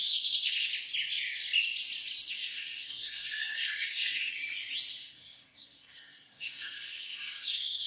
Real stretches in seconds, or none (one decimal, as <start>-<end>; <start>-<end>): 0.7-2.3; 4.4-4.9